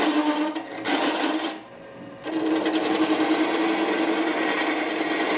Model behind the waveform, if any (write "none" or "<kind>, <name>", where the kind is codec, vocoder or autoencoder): none